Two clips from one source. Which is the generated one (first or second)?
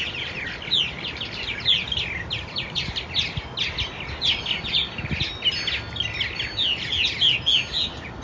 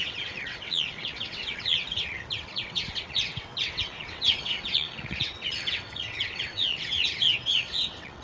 second